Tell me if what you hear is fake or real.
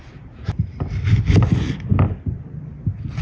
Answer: fake